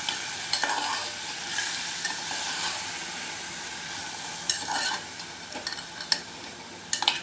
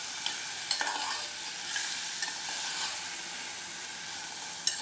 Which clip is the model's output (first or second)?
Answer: first